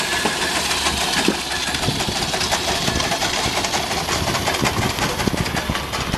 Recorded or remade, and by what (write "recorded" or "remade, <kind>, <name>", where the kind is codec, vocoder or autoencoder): recorded